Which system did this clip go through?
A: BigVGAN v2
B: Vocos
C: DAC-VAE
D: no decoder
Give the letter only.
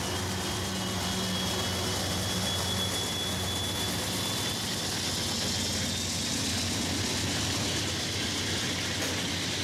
D